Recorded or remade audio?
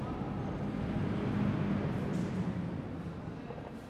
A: recorded